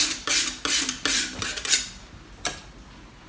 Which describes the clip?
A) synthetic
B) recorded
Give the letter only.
B